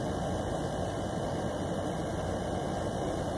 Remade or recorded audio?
recorded